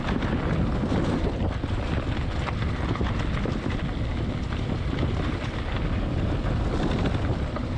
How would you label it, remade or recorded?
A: recorded